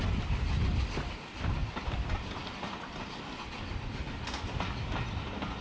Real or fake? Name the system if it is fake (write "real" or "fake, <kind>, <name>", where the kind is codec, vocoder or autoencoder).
real